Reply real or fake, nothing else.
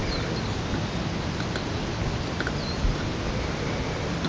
real